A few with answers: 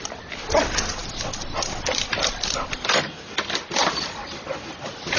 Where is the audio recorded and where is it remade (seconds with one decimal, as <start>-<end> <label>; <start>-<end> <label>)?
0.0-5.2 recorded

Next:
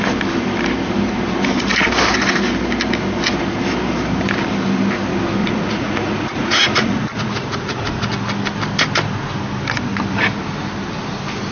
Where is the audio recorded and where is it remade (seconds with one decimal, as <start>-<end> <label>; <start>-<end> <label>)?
0.0-5.4 recorded; 5.4-8.1 remade; 8.1-11.5 recorded

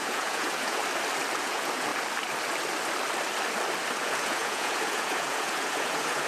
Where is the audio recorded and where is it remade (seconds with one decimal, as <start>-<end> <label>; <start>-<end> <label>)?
0.0-0.8 remade; 0.8-1.4 recorded; 1.4-1.9 remade; 1.9-4.0 recorded; 4.0-6.3 remade

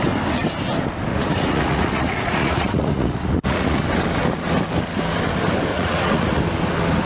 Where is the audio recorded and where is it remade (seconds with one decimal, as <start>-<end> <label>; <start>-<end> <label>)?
0.0-1.1 recorded; 1.1-3.8 remade; 3.8-5.7 recorded; 5.7-6.4 remade; 6.4-7.1 recorded